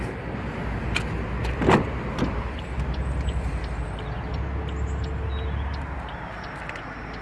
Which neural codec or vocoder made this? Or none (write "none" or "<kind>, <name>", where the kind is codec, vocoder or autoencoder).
none